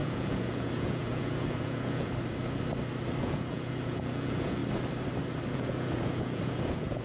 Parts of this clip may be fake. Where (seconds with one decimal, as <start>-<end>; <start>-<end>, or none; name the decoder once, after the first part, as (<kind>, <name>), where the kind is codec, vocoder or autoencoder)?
0.0-2.1 (vocoder, Vocos); 3.2-4.6; 5.5-7.0